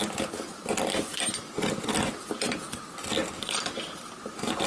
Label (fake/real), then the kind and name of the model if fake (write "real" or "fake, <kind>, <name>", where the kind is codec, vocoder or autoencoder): real